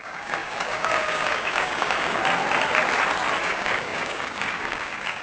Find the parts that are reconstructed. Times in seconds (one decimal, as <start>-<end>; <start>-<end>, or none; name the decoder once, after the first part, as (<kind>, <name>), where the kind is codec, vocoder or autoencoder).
0.0-2.2 (codec, DAC); 3.4-5.2